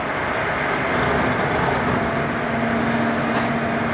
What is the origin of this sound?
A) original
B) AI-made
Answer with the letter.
A